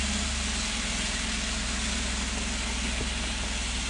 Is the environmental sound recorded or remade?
recorded